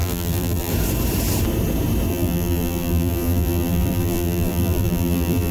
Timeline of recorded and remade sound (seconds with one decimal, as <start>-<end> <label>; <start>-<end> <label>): 0.0-0.7 remade; 0.7-2.1 recorded; 2.1-5.5 remade